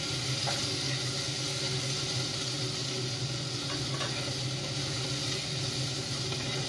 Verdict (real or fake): real